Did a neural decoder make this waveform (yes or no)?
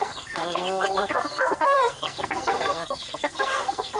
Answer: yes